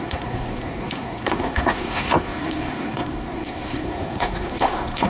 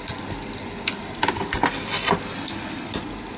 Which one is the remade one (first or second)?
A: first